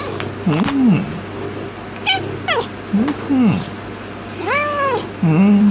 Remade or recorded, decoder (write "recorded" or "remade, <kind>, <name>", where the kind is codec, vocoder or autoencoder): recorded